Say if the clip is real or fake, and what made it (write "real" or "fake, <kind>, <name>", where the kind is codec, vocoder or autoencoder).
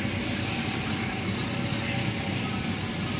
real